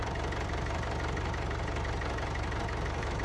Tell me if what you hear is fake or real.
fake